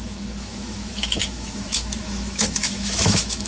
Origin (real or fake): fake